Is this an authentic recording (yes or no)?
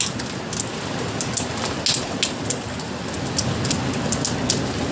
yes